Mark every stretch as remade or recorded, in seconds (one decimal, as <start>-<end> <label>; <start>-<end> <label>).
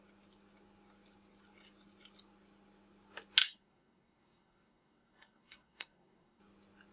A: 0.0-3.4 recorded; 3.4-6.4 remade; 6.4-6.9 recorded